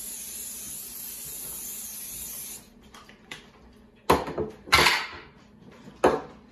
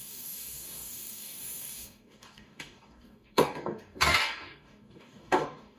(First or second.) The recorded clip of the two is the first